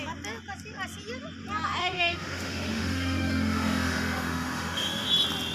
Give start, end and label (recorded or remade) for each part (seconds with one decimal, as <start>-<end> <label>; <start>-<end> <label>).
0.0-1.8 recorded; 1.8-5.1 remade; 5.1-5.5 recorded